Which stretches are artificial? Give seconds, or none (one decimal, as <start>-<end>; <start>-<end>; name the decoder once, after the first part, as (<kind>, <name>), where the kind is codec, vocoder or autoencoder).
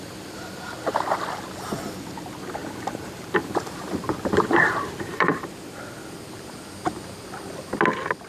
2.6-5.5 (vocoder, BigVGAN v2)